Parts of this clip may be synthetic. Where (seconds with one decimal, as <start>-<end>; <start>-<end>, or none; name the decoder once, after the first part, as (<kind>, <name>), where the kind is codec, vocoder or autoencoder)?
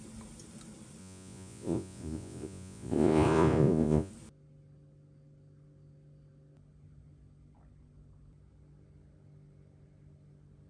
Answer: 1.0-4.1 (vocoder, Vocos)